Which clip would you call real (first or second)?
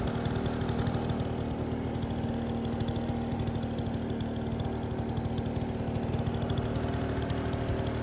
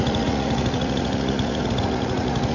first